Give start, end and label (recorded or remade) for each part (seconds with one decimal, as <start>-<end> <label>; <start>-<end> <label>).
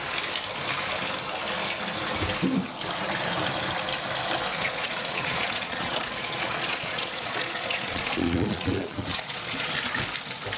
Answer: 0.0-4.5 recorded; 4.5-9.7 remade; 9.7-10.6 recorded